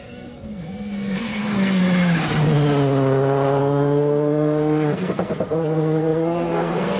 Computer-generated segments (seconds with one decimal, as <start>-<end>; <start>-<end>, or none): 0.0-1.8; 3.6-7.0